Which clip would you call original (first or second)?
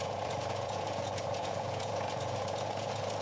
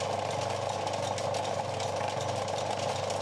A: second